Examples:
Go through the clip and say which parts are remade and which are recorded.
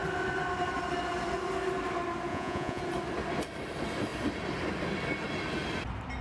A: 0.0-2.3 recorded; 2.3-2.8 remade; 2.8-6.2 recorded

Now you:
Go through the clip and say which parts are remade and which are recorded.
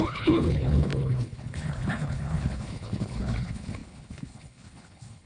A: 0.0-5.3 remade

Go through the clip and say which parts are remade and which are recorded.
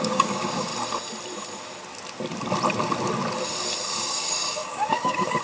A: 0.0-0.7 remade; 0.7-3.9 recorded; 3.9-5.4 remade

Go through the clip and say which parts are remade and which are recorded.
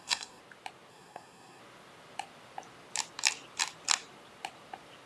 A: 0.0-0.4 remade; 0.4-0.9 recorded; 0.9-1.6 remade; 1.6-5.1 recorded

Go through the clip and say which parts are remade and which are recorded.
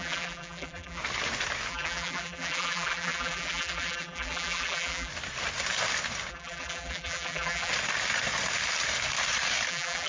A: 0.0-1.0 remade; 1.0-1.7 recorded; 1.7-5.1 remade; 5.1-6.3 recorded; 6.3-7.7 remade; 7.7-9.7 recorded; 9.7-10.1 remade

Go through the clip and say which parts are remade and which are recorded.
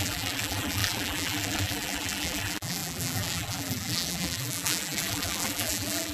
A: 0.0-6.1 remade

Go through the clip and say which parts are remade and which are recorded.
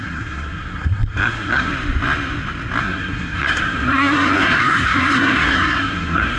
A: 0.0-1.7 remade; 1.7-2.8 recorded; 2.8-6.4 remade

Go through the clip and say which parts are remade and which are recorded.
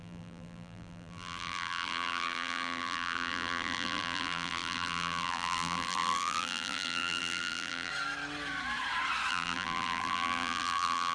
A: 0.0-7.9 remade; 7.9-9.3 recorded; 9.3-11.1 remade